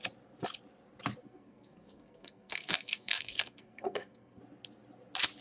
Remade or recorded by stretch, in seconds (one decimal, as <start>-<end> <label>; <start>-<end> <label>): 0.0-1.2 recorded; 1.2-4.4 remade; 4.4-5.4 recorded